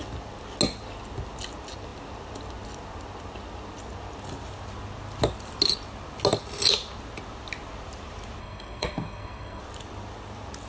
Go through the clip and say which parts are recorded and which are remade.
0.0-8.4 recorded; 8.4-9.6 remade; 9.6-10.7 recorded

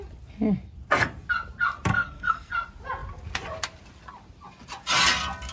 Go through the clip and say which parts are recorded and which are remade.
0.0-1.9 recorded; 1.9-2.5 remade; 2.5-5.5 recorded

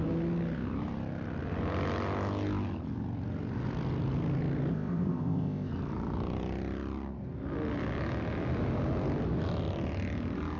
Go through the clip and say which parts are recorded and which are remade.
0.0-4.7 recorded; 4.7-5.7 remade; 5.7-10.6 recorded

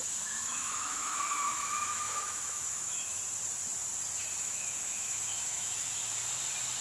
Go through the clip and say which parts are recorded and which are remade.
0.0-3.2 remade; 3.2-4.4 recorded; 4.4-6.0 remade; 6.0-6.8 recorded

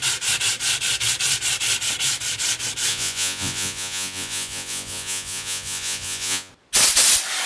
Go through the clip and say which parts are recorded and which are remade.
0.0-2.9 recorded; 2.9-6.5 remade; 6.5-7.5 recorded

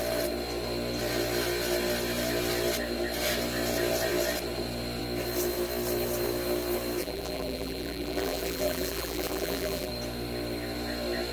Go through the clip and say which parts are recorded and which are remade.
0.0-7.0 recorded; 7.0-9.9 remade; 9.9-11.3 recorded

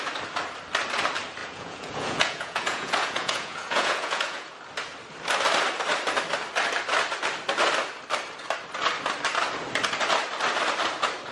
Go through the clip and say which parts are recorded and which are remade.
0.0-1.4 recorded; 1.4-4.5 remade; 4.5-11.3 recorded

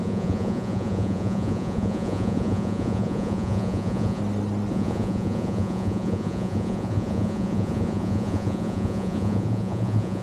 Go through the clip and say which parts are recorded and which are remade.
0.0-4.2 remade; 4.2-4.7 recorded; 4.7-10.2 remade